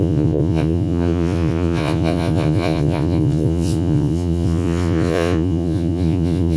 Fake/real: fake